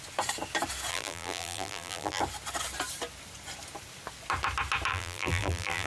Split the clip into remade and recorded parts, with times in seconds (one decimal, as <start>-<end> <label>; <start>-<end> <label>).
0.0-0.9 recorded; 0.9-2.2 remade; 2.2-4.9 recorded; 4.9-5.9 remade